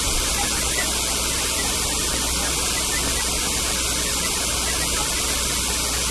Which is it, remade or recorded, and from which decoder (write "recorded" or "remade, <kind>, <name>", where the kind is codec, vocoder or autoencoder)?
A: recorded